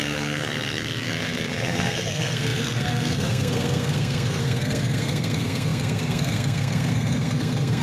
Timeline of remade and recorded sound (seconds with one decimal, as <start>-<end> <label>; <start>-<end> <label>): 0.0-7.8 remade